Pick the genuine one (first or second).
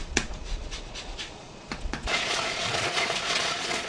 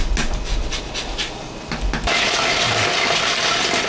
second